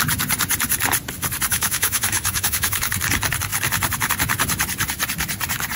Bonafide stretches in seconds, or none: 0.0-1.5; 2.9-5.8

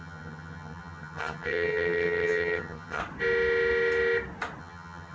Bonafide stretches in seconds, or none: 3.0-4.6

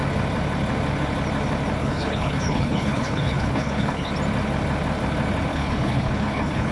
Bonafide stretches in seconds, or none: 0.0-1.8; 4.1-5.5

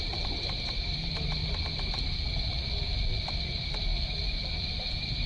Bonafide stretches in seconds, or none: 1.4-4.6

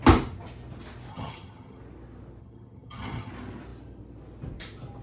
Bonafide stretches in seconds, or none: 0.0-1.1; 1.8-2.4; 3.3-5.0

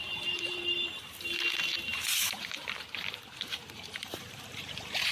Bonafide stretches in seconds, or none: 0.6-1.9